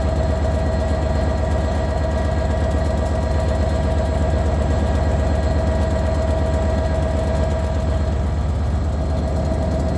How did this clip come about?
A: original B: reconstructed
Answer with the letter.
A